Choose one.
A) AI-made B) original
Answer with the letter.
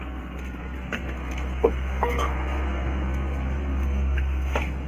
A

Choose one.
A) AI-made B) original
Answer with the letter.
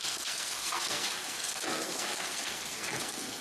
A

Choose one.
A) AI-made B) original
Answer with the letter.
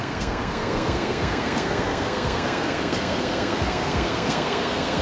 A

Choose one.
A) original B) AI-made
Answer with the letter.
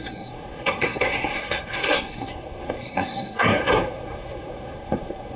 B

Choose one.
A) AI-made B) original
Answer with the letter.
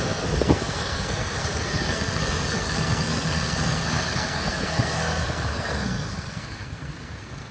A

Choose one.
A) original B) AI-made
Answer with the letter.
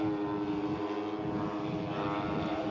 A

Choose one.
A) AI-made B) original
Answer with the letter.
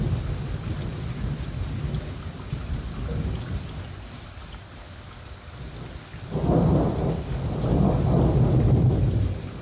B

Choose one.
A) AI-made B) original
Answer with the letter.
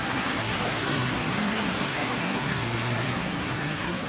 A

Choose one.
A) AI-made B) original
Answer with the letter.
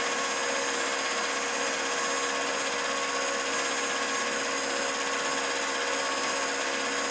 B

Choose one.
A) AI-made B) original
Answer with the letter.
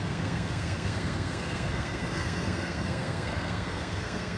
A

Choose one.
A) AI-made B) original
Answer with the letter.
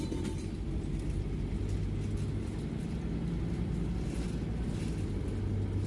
B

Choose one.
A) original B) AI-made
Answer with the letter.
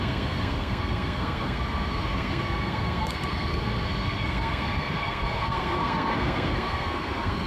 B